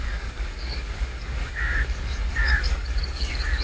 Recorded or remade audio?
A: remade